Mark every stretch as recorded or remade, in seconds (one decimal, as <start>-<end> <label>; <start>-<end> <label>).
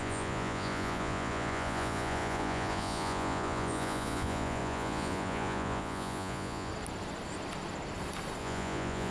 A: 0.0-6.7 remade; 6.7-8.4 recorded; 8.4-9.1 remade